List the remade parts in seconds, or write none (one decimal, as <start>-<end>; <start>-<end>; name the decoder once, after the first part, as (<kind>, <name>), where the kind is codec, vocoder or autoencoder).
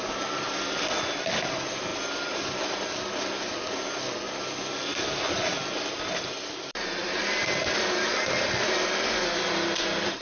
none